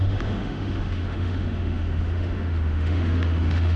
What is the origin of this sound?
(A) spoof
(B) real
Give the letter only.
A